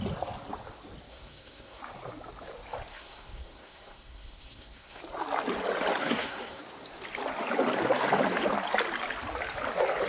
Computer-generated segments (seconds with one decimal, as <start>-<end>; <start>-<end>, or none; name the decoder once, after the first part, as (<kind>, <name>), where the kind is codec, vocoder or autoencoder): 1.1-1.8 (codec, SNAC); 2.9-5.0; 6.0-6.6